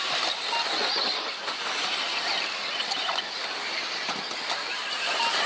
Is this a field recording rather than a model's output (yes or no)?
yes